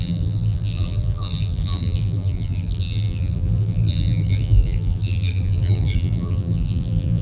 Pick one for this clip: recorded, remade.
remade